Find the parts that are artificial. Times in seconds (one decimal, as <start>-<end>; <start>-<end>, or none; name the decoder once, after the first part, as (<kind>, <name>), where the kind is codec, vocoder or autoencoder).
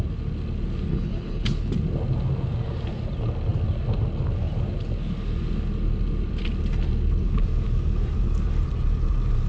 0.9-1.7 (codec, HILCodec)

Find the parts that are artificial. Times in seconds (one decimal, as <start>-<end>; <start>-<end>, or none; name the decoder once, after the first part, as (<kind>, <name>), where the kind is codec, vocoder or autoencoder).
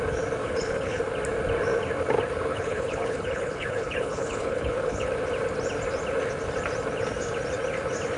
0.4-1.0 (codec, HILCodec); 2.5-5.1